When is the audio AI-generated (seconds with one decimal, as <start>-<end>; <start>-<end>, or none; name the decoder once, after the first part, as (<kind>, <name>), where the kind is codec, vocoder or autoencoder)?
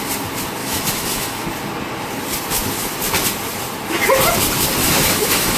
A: 0.6-1.4 (autoencoder, DAC-VAE); 4.8-5.6